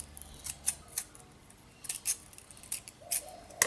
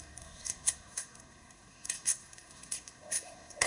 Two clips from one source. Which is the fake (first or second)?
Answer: second